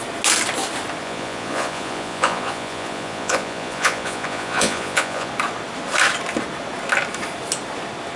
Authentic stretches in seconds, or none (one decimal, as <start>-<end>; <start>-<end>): 0.0-1.0; 5.3-8.2